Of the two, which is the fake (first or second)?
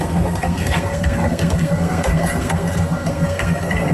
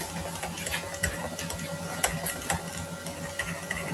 first